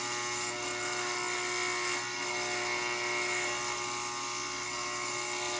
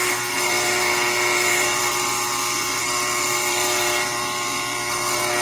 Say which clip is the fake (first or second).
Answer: second